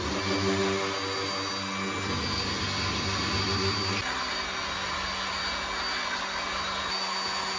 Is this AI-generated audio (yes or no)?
no